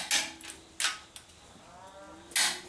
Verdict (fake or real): real